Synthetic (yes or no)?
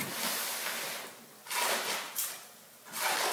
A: no